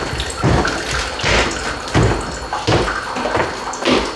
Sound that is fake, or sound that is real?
real